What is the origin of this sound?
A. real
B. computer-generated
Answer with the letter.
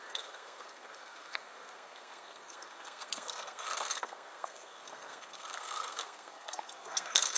B